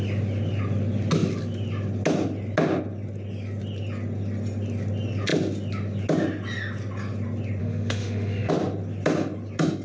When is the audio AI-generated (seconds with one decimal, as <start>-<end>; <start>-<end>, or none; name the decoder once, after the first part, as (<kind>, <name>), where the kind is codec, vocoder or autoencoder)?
7.6-8.5 (autoencoder, DAC-VAE)